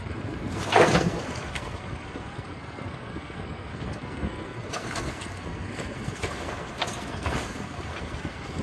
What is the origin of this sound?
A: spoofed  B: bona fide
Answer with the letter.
A